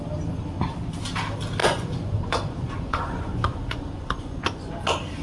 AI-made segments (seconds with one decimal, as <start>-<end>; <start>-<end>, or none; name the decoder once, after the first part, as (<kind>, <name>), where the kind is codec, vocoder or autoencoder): 1.6-4.7 (vocoder, Vocos)